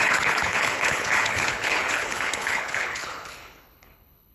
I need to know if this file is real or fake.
fake